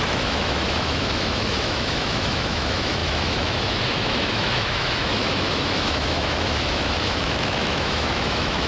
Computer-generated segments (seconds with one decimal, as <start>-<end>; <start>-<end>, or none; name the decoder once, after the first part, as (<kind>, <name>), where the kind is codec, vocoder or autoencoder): 0.0-8.7 (autoencoder, DAC-VAE)